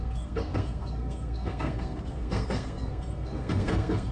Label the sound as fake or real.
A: fake